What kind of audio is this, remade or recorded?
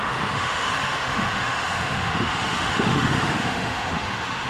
remade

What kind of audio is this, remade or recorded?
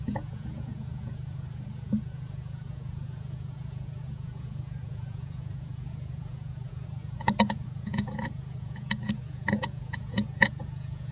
remade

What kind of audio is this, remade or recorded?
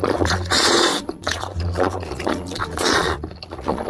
remade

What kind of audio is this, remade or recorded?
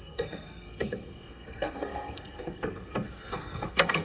remade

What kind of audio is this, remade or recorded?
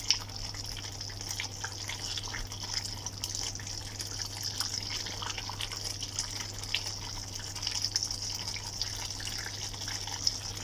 recorded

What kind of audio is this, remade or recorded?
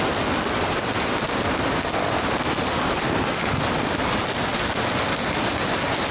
recorded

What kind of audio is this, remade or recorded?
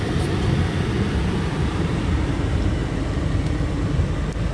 remade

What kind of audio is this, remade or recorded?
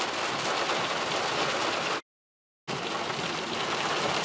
recorded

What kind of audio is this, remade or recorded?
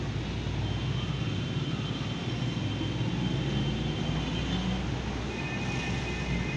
recorded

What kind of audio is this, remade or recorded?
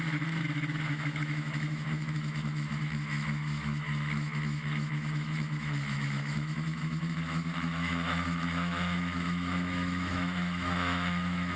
remade